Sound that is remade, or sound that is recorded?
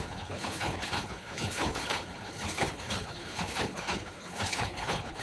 remade